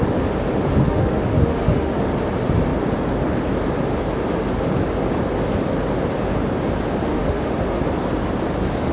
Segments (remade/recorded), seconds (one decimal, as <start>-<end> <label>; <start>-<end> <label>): 0.0-0.8 recorded; 0.8-1.9 remade; 1.9-7.0 recorded; 7.0-7.8 remade; 7.8-8.9 recorded